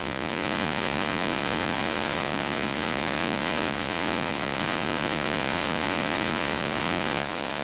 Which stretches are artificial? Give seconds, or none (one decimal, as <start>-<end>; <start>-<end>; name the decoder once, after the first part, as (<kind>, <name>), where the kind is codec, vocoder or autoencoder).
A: 0.0-7.6 (vocoder, Vocos)